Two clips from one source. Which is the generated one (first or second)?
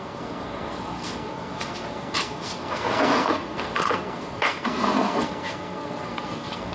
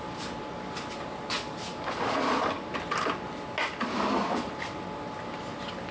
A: first